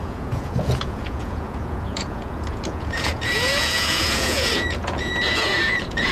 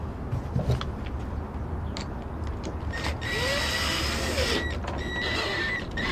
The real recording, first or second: second